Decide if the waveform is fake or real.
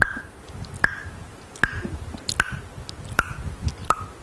real